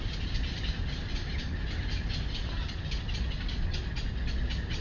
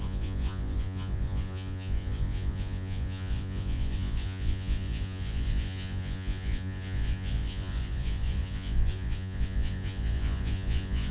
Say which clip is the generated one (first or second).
second